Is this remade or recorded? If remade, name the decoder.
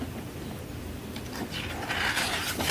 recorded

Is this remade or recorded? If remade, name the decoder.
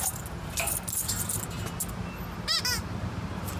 recorded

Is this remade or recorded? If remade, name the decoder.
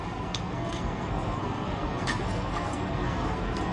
remade, codec, SNAC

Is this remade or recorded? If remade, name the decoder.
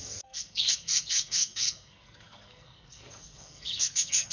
remade, codec, SNAC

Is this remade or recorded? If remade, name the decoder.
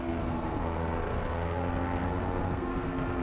remade, codec, SNAC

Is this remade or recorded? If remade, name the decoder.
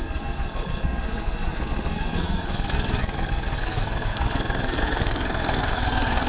remade, codec, SNAC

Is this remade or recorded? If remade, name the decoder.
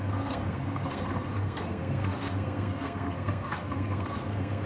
remade, codec, SNAC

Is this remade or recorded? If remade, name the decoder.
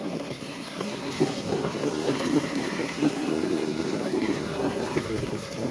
remade, codec, SNAC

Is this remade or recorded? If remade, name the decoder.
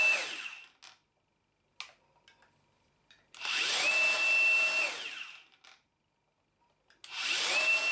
recorded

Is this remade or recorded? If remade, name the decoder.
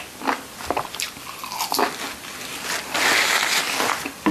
recorded